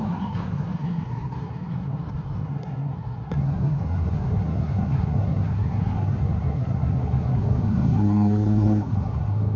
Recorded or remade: remade